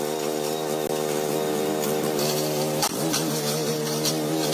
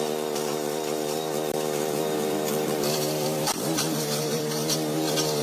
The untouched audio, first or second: first